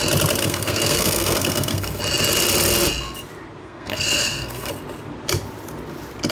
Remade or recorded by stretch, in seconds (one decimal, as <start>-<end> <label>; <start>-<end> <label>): 0.0-0.4 recorded; 0.4-2.0 remade; 2.0-3.6 recorded; 3.6-4.7 remade; 4.7-6.3 recorded